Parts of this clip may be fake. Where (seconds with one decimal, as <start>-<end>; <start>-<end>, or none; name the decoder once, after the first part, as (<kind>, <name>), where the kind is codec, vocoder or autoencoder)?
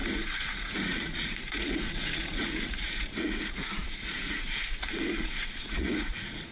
0.0-6.5 (vocoder, Vocos)